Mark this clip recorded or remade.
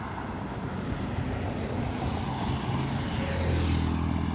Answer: recorded